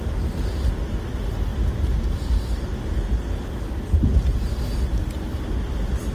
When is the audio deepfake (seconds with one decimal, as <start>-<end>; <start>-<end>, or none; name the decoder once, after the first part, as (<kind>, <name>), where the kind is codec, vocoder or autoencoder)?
none